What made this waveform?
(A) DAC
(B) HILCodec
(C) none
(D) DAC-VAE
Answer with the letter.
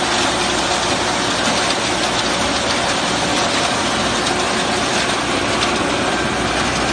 C